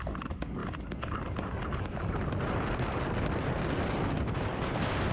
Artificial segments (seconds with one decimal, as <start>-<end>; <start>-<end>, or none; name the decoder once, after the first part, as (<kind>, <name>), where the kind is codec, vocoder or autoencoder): none

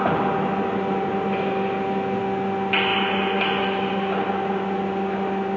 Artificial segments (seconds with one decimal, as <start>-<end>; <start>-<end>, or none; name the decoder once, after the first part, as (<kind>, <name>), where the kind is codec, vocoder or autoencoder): none

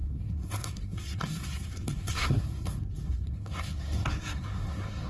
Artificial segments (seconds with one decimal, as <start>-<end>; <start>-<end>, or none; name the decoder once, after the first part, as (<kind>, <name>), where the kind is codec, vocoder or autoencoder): 0.0-5.1 (codec, SNAC)

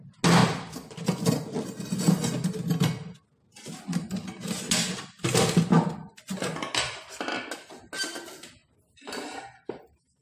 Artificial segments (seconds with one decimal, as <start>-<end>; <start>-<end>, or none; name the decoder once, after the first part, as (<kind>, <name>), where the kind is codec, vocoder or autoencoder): none

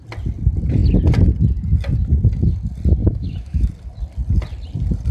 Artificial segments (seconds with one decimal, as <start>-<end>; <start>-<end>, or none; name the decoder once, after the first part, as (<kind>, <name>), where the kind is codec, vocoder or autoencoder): 3.0-3.7 (autoencoder, DAC-VAE)

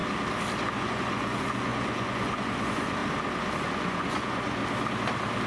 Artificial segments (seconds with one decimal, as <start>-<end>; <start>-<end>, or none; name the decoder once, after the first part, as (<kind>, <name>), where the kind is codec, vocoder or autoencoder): 0.8-3.0 (vocoder, Vocos); 3.6-4.6

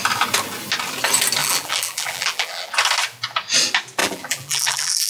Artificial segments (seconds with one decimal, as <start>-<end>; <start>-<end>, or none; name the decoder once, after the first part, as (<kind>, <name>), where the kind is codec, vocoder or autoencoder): 1.4-2.7 (vocoder, BigVGAN v2); 4.0-5.1